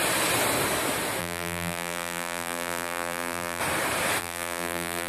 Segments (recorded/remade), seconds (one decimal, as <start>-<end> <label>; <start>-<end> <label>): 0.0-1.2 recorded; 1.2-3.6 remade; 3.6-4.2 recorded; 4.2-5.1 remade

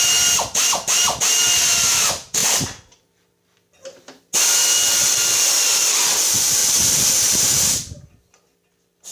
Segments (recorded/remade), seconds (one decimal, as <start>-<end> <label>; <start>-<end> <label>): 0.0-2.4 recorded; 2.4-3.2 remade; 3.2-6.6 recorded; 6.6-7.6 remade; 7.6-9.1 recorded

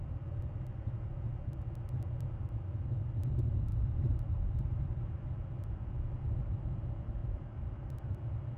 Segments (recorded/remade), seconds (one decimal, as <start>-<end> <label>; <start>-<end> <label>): 0.0-3.7 recorded; 3.7-5.4 remade; 5.4-7.2 recorded; 7.2-8.0 remade; 8.0-8.6 recorded

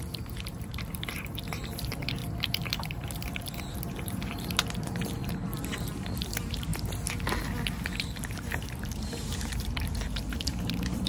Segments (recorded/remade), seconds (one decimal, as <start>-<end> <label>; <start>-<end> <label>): 0.0-5.2 remade; 5.2-6.2 recorded; 6.2-6.7 remade; 6.7-8.0 recorded; 8.0-11.1 remade